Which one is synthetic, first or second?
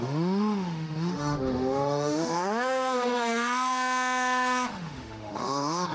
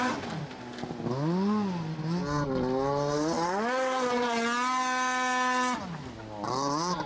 first